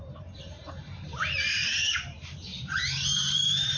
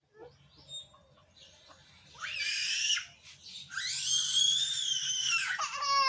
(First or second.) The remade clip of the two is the first